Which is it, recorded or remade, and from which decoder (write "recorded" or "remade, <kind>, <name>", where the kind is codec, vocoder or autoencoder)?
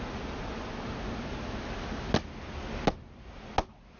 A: recorded